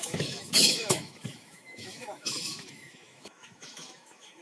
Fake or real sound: fake